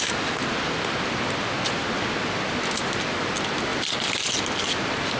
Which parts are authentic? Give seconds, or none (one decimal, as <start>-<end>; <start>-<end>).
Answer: 0.0-3.7; 4.3-5.2